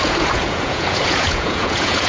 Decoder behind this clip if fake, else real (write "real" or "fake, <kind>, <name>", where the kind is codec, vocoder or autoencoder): fake, vocoder, Vocos